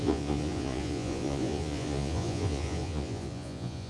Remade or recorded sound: remade